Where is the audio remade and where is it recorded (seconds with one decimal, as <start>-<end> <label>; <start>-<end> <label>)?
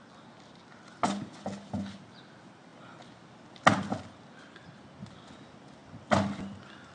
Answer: 0.0-6.9 recorded